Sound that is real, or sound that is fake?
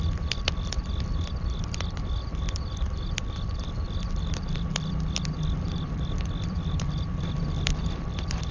fake